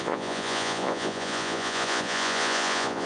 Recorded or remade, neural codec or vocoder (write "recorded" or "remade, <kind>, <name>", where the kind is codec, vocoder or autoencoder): remade, vocoder, Vocos